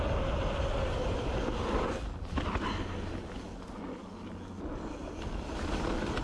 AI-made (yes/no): no